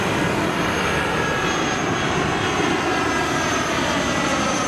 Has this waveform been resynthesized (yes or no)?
no